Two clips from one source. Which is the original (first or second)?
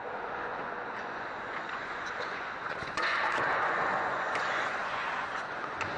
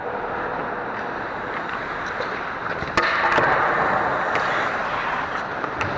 second